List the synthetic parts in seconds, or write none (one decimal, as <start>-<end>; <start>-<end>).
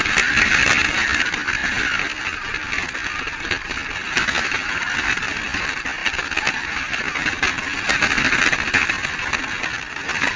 none